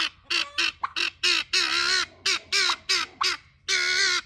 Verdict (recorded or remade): recorded